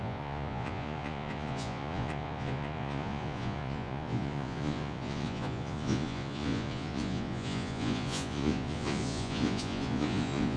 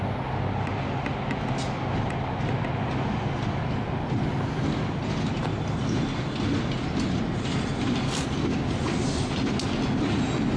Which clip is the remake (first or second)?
first